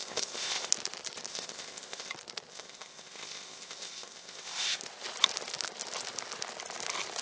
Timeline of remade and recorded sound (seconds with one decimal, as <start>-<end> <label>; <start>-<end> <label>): 0.0-0.7 remade; 0.7-1.3 recorded; 1.3-2.1 remade; 2.1-2.5 recorded; 2.5-4.8 remade; 4.8-7.2 recorded